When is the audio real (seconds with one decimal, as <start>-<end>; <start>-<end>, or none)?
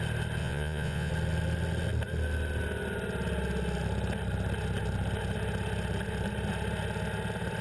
0.0-0.4; 1.1-7.6